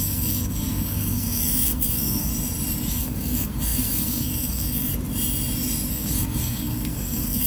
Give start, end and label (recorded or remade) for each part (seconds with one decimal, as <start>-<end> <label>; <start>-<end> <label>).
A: 0.0-2.3 remade; 2.3-2.9 recorded; 2.9-4.9 remade; 4.9-5.9 recorded; 5.9-7.5 remade